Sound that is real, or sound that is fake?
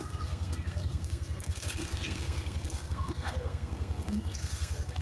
fake